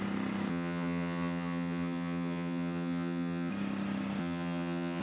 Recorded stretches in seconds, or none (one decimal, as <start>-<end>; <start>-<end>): 0.0-0.5; 3.5-4.2